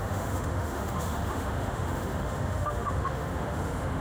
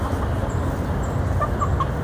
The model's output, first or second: first